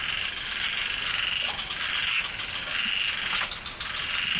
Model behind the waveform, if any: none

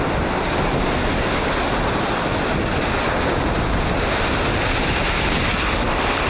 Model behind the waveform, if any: none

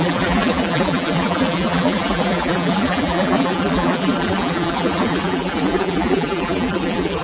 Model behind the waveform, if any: vocoder, BigVGAN v2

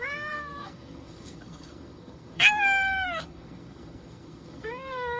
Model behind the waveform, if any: codec, SNAC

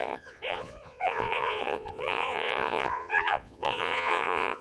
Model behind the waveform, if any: vocoder, Vocos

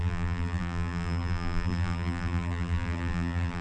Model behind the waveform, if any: vocoder, BigVGAN v2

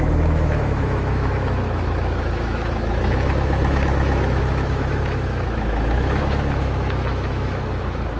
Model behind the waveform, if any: autoencoder, DAC-VAE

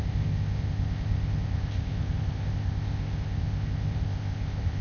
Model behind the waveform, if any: codec, ZipCodec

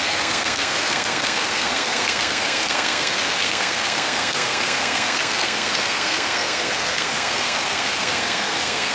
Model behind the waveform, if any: codec, SNAC